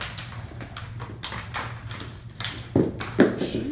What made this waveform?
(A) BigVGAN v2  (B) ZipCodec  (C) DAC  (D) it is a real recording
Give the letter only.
D